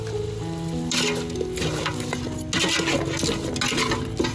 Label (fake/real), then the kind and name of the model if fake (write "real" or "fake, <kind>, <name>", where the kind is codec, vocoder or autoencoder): real